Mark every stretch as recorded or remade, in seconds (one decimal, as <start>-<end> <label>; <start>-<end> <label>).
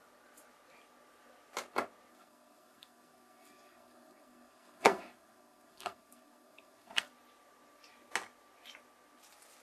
0.0-2.1 recorded; 2.1-7.1 remade; 7.1-9.6 recorded